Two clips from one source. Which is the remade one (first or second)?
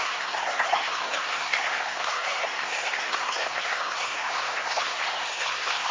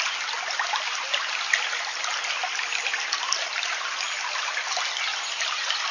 first